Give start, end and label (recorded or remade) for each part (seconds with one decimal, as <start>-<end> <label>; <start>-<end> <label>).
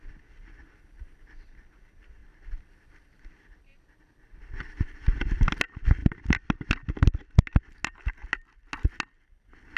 0.0-2.2 recorded; 2.2-4.7 remade; 4.7-9.8 recorded